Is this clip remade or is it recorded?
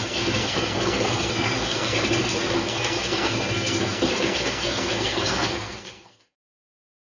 remade